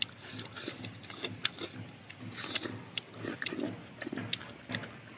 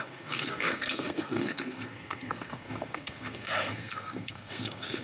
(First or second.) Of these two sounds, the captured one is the first